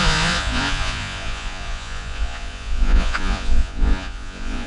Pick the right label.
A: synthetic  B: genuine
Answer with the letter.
A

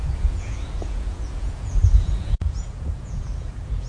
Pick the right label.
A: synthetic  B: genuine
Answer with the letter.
A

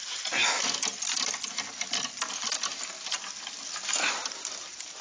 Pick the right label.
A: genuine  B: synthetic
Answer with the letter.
A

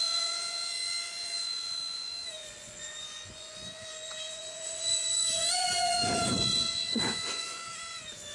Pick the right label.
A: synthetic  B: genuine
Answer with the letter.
A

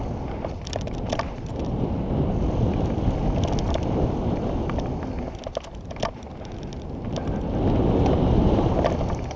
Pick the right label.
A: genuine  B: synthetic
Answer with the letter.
A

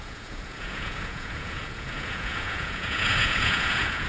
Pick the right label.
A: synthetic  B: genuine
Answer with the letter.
A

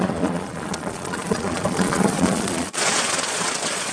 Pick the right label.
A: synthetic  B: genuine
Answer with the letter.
A